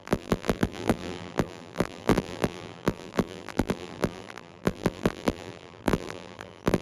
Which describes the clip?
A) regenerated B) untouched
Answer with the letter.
A